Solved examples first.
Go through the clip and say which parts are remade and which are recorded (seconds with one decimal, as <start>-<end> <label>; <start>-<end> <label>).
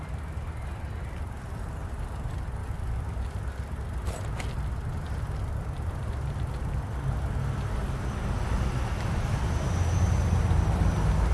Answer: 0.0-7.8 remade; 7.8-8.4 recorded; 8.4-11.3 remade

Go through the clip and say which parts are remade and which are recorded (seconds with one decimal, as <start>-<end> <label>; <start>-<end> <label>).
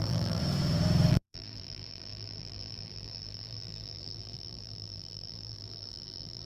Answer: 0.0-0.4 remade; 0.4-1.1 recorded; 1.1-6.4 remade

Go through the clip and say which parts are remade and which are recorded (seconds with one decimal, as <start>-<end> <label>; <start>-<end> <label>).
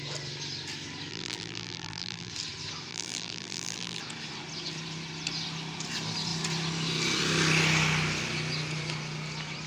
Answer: 0.0-1.1 recorded; 1.1-2.3 remade; 2.3-2.9 recorded; 2.9-4.0 remade; 4.0-9.7 recorded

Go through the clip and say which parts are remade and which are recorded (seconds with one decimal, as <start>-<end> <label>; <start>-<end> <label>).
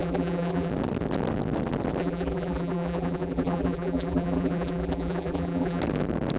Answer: 0.0-0.7 remade; 0.7-2.0 recorded; 2.0-5.8 remade; 5.8-6.4 recorded